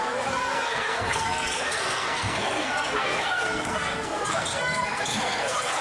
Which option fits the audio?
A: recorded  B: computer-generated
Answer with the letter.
B